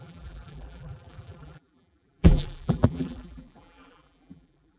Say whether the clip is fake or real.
fake